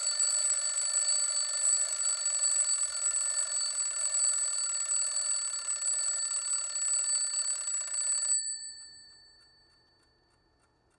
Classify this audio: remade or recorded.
recorded